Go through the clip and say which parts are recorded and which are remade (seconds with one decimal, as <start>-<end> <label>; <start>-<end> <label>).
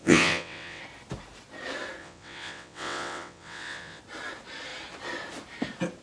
0.0-0.8 remade; 0.8-2.0 recorded; 2.0-4.0 remade; 4.0-6.0 recorded